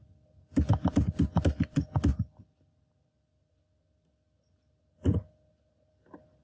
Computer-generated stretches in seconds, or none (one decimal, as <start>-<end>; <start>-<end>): none